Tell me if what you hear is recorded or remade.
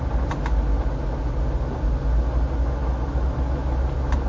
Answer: recorded